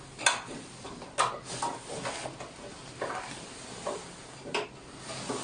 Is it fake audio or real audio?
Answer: real